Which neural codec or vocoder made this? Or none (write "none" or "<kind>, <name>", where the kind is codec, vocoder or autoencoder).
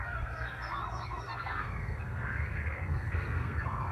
codec, SNAC